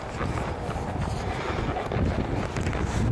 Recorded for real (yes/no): yes